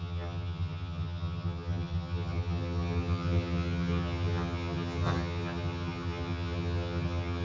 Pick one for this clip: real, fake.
fake